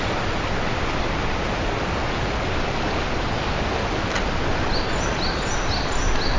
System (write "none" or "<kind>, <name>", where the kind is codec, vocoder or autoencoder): none